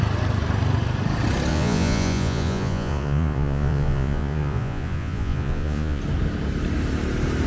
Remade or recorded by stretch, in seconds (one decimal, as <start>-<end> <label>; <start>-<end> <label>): 0.0-1.5 recorded; 1.5-6.0 remade; 6.0-7.5 recorded